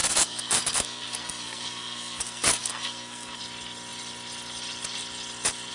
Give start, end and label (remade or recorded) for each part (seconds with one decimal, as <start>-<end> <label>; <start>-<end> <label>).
0.0-3.4 remade; 3.4-5.7 recorded

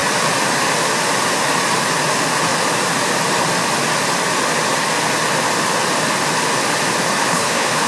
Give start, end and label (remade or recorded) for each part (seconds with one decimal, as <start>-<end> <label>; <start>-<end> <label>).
0.0-7.2 recorded; 7.2-7.9 remade

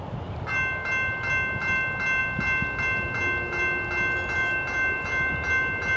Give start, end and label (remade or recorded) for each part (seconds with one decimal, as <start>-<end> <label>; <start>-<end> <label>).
0.0-6.0 recorded

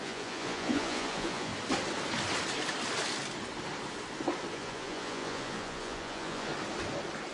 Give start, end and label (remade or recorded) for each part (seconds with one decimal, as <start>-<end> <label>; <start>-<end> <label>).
0.0-1.5 remade; 1.5-4.5 recorded; 4.5-6.5 remade; 6.5-7.3 recorded

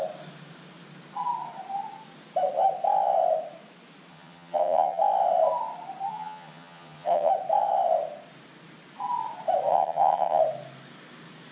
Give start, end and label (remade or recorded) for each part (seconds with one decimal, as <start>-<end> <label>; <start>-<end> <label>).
0.0-4.1 recorded; 4.1-5.0 remade; 5.0-6.1 recorded; 6.1-7.3 remade; 7.3-9.7 recorded; 9.7-10.4 remade; 10.4-11.5 recorded

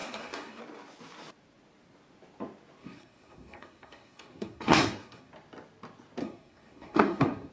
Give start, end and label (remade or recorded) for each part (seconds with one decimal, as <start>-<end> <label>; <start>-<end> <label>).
0.0-0.6 remade; 0.6-2.8 recorded; 2.8-5.3 remade; 5.3-6.2 recorded; 6.2-7.5 remade

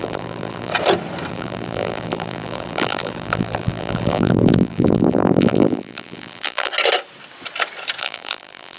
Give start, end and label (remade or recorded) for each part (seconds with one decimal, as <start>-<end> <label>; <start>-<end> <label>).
0.0-0.7 remade; 0.7-1.3 recorded; 1.3-6.7 remade; 6.7-8.0 recorded; 8.0-8.8 remade

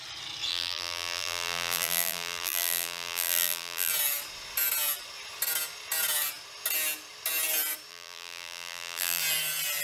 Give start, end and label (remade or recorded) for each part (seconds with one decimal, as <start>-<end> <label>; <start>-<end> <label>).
0.0-0.5 recorded; 0.5-3.9 remade; 3.9-7.9 recorded; 7.9-9.2 remade; 9.2-9.8 recorded